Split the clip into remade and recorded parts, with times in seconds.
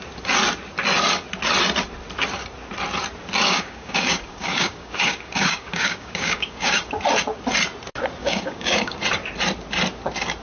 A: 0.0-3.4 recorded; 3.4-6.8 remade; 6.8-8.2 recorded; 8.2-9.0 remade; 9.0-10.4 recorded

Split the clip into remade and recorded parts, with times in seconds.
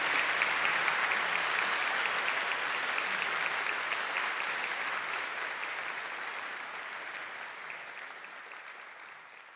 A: 0.0-9.6 recorded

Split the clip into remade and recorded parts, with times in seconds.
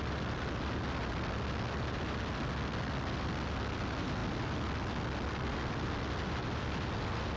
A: 0.0-7.4 recorded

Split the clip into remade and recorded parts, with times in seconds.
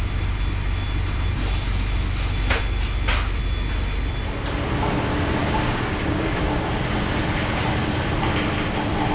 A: 0.0-5.4 recorded; 5.4-6.4 remade; 6.4-9.1 recorded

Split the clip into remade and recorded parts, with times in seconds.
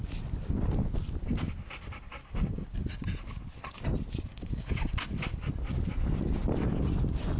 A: 0.0-2.2 recorded; 2.2-2.8 remade; 2.8-4.3 recorded; 4.3-5.1 remade; 5.1-7.4 recorded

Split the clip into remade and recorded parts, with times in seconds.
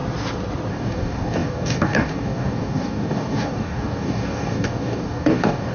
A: 0.0-0.7 recorded; 0.7-5.7 remade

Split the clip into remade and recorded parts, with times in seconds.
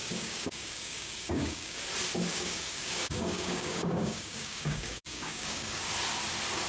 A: 0.0-1.8 remade; 1.8-2.3 recorded; 2.3-5.8 remade; 5.8-6.7 recorded